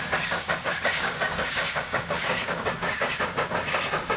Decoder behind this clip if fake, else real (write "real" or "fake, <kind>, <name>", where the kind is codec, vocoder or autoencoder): fake, codec, DAC